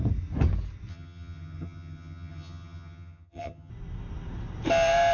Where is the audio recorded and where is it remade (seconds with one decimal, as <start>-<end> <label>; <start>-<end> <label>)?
0.0-0.9 recorded; 0.9-3.7 remade; 3.7-5.1 recorded